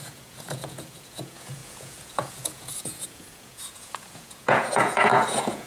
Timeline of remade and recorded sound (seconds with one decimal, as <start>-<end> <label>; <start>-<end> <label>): 0.0-5.7 remade